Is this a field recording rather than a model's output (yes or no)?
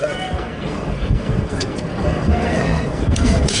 no